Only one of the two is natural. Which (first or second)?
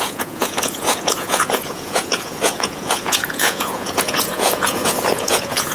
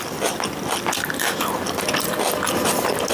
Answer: second